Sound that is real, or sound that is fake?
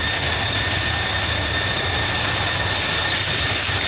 real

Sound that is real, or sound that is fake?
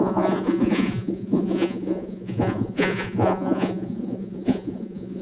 fake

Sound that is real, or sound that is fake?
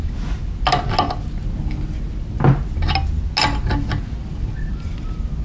real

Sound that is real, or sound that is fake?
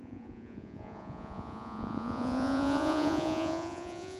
fake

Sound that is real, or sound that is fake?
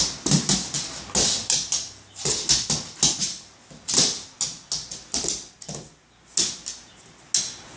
real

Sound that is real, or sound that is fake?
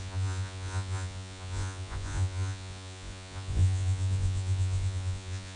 fake